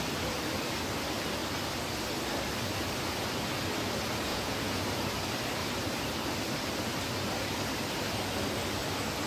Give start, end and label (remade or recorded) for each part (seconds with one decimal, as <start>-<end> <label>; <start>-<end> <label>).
0.0-4.3 recorded; 4.3-4.8 remade; 4.8-9.3 recorded